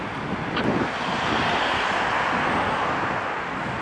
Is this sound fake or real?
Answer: real